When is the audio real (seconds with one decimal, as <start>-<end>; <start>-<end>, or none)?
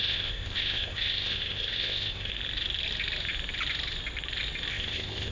2.3-4.7